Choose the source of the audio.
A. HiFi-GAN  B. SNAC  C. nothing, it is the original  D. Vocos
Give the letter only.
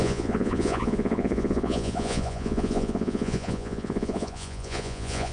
D